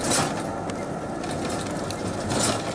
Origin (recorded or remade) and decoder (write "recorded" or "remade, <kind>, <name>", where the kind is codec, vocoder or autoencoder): recorded